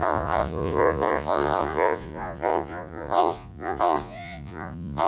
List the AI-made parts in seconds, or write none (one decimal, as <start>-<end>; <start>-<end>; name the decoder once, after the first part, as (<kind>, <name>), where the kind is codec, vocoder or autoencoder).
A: 0.0-5.1 (vocoder, Vocos)